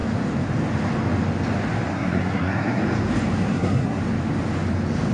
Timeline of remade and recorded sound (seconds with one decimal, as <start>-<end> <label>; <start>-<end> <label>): 0.0-1.9 recorded; 1.9-2.8 remade; 2.8-3.4 recorded; 3.4-4.0 remade; 4.0-5.1 recorded